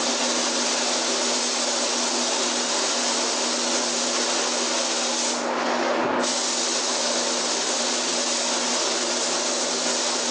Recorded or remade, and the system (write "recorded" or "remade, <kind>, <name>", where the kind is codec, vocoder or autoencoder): recorded